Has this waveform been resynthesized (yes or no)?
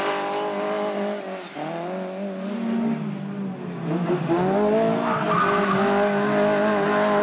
no